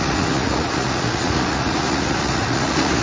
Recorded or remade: remade